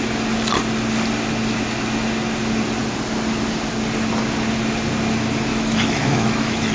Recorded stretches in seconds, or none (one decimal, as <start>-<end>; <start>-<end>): 0.0-5.5